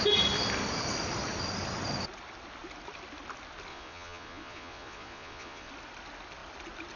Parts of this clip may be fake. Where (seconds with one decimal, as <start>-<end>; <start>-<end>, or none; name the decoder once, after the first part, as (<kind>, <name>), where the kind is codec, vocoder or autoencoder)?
3.7-5.7 (vocoder, Vocos)